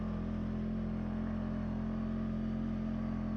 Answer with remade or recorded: recorded